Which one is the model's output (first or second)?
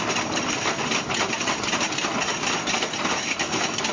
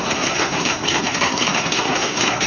second